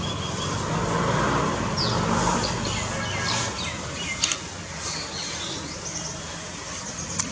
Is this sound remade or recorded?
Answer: recorded